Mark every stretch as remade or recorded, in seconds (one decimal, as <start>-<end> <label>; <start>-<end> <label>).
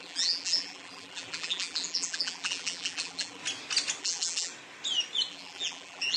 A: 0.0-3.4 remade; 3.4-4.0 recorded; 4.0-4.5 remade; 4.5-5.3 recorded; 5.3-6.2 remade